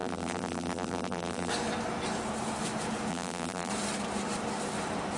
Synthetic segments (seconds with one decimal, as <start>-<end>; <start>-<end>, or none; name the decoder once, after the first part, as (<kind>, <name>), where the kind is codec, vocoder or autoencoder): 0.0-1.5 (vocoder, BigVGAN v2); 3.1-3.7